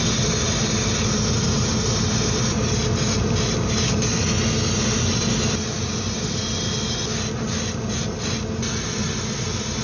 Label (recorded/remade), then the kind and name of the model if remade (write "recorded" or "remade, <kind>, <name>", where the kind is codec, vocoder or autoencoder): recorded